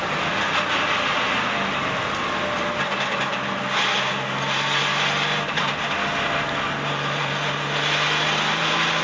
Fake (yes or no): no